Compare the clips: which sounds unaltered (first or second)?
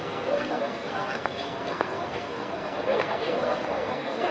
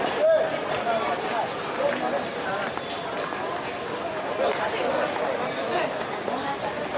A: second